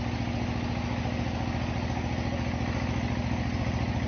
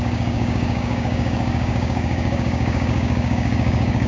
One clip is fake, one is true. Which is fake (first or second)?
second